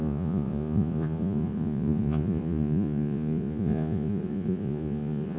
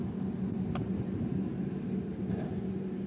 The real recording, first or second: second